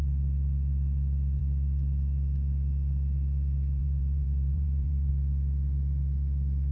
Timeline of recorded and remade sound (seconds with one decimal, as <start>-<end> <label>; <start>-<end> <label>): 0.0-3.8 recorded; 3.8-5.1 remade; 5.1-6.7 recorded